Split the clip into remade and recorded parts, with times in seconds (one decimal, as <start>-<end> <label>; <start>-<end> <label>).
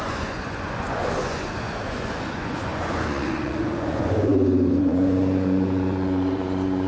0.0-4.3 remade; 4.3-4.8 recorded; 4.8-6.9 remade